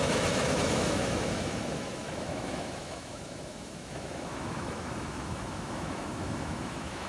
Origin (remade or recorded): remade